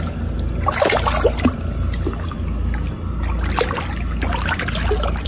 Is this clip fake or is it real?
real